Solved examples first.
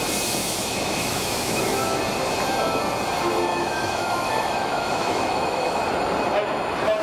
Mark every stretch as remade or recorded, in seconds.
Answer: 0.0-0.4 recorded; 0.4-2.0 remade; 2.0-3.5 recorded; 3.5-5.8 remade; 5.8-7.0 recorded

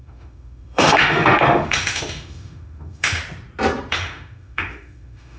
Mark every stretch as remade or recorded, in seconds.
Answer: 0.0-3.2 remade; 3.2-3.9 recorded; 3.9-5.4 remade

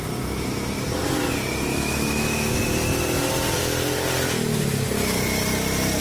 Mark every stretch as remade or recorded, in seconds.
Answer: 0.0-1.7 recorded; 1.7-2.6 remade; 2.6-6.0 recorded

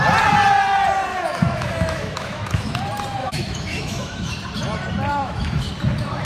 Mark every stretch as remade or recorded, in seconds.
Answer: 0.0-1.1 recorded; 1.1-2.8 remade; 2.8-3.2 recorded; 3.2-4.3 remade; 4.3-5.1 recorded; 5.1-5.7 remade; 5.7-6.3 recorded